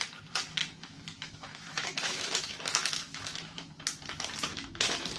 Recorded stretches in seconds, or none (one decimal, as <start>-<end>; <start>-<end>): 0.0-0.6; 3.7-4.5